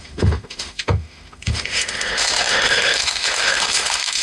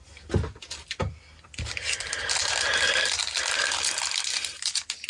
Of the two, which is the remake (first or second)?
first